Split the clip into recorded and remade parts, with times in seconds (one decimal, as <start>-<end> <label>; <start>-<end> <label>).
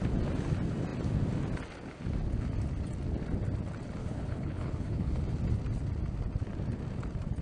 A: 0.0-4.0 recorded; 4.0-5.2 remade; 5.2-7.4 recorded